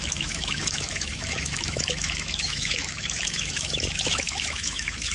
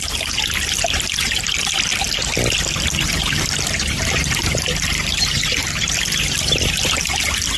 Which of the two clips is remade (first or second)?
first